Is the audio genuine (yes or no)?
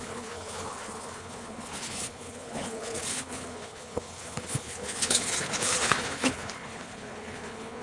no